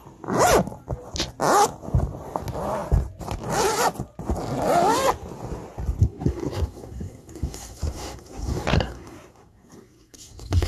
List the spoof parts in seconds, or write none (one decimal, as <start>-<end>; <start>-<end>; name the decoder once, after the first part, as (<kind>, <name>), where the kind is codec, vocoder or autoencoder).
6.0-10.7 (codec, SNAC)